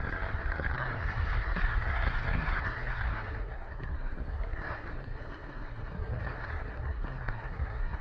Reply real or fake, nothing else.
fake